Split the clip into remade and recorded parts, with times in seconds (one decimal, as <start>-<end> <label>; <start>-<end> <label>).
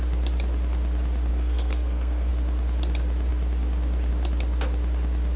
0.0-1.3 recorded; 1.3-2.3 remade; 2.3-5.4 recorded